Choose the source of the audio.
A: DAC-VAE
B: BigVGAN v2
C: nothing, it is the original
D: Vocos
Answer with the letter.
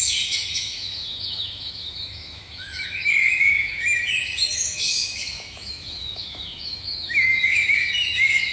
A